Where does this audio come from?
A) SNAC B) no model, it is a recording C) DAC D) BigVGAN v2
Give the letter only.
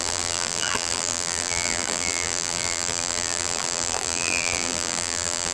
D